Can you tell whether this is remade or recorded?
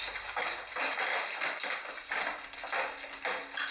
recorded